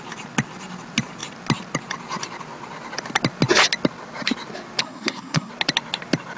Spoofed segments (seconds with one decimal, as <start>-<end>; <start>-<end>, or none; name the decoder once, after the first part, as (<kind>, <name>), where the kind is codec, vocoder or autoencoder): 4.8-5.5 (codec, SNAC)